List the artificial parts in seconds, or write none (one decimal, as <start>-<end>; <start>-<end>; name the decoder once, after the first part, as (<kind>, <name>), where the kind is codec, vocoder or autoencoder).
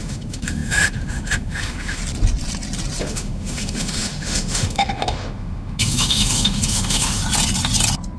0.0-2.0 (autoencoder, DAC-VAE); 3.0-7.2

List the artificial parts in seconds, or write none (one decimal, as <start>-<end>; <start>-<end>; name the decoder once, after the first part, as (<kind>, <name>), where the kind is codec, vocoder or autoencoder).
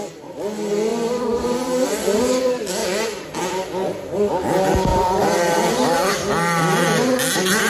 0.9-2.2 (vocoder, BigVGAN v2); 4.9-6.1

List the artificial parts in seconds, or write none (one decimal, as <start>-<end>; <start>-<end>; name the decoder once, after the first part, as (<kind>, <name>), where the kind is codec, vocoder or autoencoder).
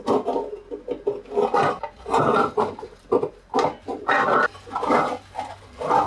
none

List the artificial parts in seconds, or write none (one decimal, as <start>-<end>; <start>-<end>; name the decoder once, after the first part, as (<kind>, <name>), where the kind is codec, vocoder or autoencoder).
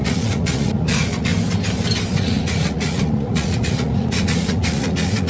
0.0-1.3 (vocoder, Vocos); 2.1-5.3